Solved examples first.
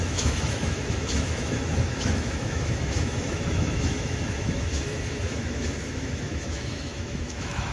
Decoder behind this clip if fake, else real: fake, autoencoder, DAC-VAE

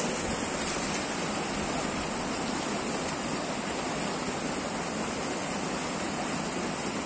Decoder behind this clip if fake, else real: real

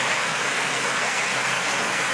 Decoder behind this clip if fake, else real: fake, codec, SNAC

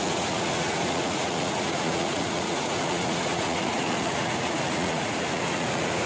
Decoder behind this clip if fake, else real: fake, vocoder, Vocos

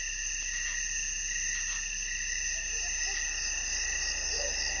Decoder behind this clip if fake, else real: real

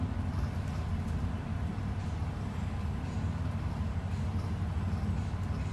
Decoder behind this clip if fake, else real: real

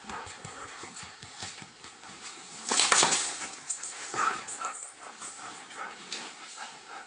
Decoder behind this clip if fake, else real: fake, codec, SNAC